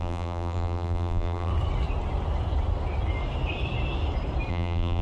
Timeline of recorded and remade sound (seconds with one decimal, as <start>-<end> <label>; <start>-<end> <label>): 0.0-1.5 remade; 1.5-4.5 recorded; 4.5-5.0 remade